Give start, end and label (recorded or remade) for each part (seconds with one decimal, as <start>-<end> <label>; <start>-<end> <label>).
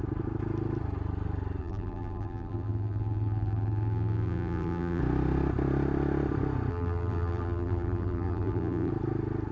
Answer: 0.0-1.6 recorded; 1.6-5.0 remade; 5.0-6.7 recorded; 6.7-8.9 remade; 8.9-9.5 recorded